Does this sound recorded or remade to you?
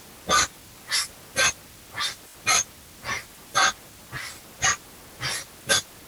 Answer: recorded